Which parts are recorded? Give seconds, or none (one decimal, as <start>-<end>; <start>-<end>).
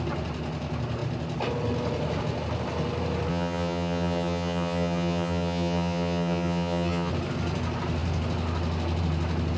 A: 0.0-3.3; 7.1-9.6